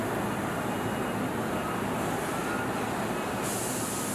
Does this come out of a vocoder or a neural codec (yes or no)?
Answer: no